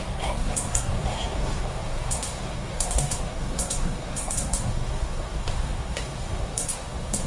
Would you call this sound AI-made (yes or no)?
yes